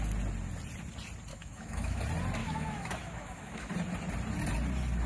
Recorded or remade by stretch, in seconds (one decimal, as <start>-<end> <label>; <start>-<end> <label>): 0.0-1.3 recorded; 1.3-2.0 remade; 2.0-2.4 recorded; 2.4-3.7 remade; 3.7-5.1 recorded